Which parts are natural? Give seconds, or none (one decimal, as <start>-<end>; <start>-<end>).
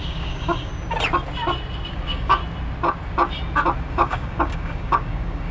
0.7-1.9; 2.4-3.9